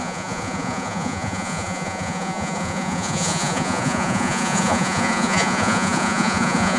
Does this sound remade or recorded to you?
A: remade